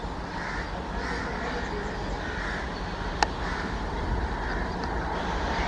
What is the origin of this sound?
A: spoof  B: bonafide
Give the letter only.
B